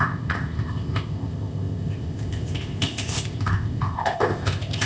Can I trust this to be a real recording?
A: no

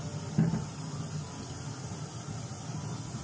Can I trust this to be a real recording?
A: yes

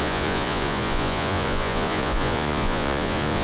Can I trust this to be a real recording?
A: no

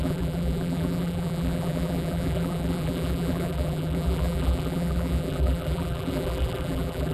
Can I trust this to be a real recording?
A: no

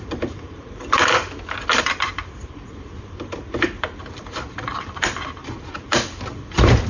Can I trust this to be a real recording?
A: no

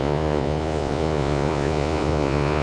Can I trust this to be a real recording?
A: no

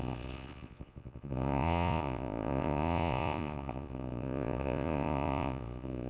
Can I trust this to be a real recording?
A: no